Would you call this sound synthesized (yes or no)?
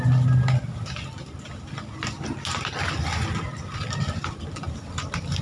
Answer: no